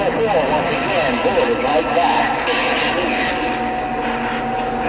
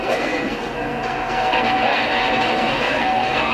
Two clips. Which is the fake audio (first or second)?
second